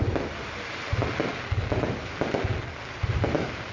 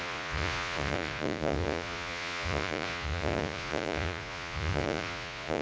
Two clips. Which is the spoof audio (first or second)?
second